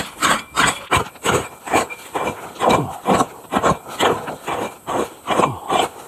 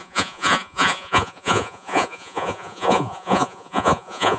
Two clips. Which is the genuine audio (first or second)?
first